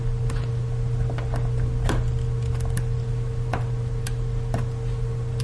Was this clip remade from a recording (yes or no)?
no